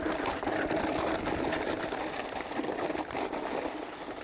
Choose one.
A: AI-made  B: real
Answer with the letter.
B